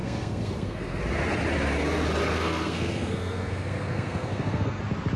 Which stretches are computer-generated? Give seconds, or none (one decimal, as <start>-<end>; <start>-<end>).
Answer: 0.0-1.0; 2.3-4.8